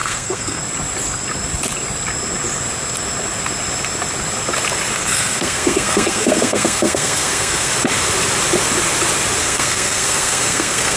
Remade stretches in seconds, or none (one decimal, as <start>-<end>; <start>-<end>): 0.0-0.6; 5.0-7.7; 9.4-11.0